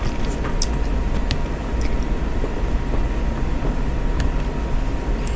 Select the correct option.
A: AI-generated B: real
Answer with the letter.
B